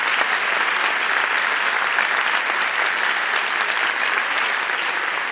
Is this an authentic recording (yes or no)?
no